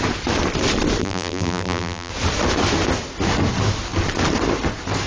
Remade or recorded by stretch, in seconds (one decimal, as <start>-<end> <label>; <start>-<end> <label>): 0.0-1.0 recorded; 1.0-2.1 remade; 2.1-5.1 recorded